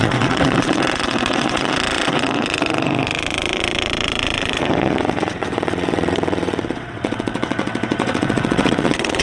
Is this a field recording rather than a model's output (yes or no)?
no